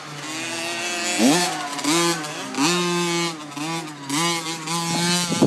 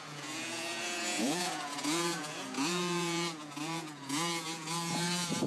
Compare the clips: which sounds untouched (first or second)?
first